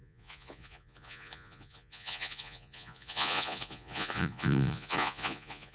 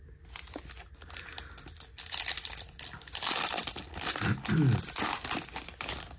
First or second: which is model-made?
first